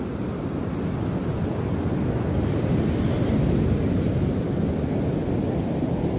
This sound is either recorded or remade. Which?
recorded